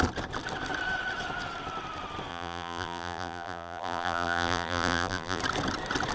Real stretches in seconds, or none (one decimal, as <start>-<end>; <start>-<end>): 0.0-2.3; 5.4-6.1